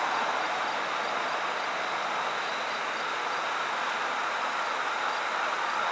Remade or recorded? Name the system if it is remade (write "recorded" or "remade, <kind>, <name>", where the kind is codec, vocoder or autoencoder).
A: recorded